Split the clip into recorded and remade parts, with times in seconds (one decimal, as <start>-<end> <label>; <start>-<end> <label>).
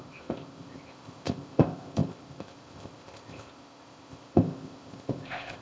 0.0-5.6 remade